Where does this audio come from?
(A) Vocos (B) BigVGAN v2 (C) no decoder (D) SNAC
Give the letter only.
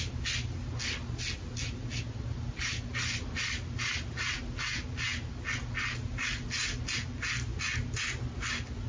C